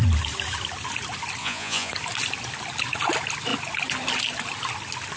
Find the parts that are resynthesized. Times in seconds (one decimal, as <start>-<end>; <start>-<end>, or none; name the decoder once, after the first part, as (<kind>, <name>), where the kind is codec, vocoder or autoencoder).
1.4-1.9 (vocoder, Vocos)